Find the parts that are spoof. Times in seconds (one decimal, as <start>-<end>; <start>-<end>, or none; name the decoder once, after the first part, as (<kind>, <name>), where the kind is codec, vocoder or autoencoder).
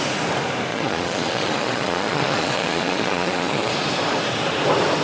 0.7-3.7 (vocoder, Vocos)